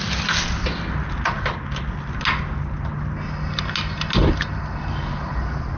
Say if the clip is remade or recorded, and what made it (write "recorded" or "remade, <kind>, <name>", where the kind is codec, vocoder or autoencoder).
recorded